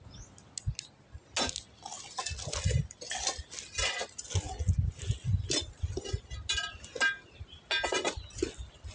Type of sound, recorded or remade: recorded